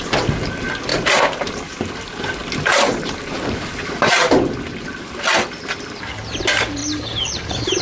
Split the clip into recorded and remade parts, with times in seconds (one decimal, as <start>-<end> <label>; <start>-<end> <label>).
0.0-0.9 recorded; 0.9-1.6 remade; 1.6-2.7 recorded; 2.7-4.1 remade; 4.1-6.8 recorded; 6.8-7.8 remade